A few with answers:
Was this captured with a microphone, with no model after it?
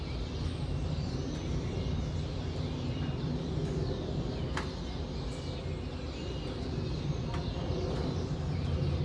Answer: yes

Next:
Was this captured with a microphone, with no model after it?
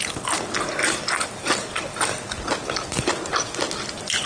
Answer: yes